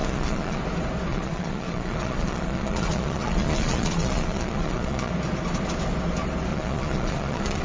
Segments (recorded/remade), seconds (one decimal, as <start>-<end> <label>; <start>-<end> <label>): 0.0-0.6 remade; 0.6-1.1 recorded; 1.1-5.1 remade; 5.1-6.5 recorded; 6.5-7.6 remade